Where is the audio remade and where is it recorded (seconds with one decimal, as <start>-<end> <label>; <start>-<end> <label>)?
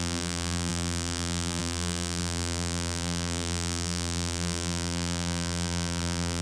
0.0-6.4 remade